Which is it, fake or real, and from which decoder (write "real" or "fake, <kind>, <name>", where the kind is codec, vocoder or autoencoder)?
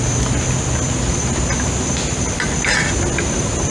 real